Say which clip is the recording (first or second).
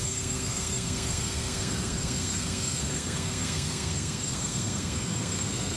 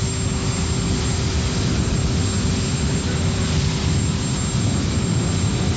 second